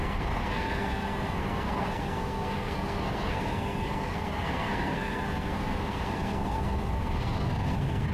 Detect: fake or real fake